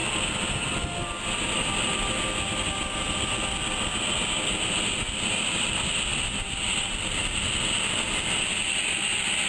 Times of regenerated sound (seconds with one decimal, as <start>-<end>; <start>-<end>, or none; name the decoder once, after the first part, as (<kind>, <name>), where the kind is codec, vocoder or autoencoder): none